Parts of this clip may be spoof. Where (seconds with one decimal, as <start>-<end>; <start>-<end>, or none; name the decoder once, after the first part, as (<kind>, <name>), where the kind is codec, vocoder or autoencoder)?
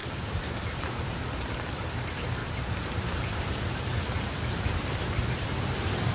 0.0-1.2 (vocoder, BigVGAN v2); 2.4-4.6